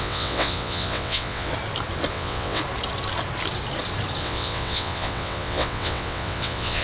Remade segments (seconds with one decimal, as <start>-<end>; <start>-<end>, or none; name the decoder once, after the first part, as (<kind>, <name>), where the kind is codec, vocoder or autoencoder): 0.0-1.5 (vocoder, WaveNeXt); 2.1-2.6; 4.2-6.8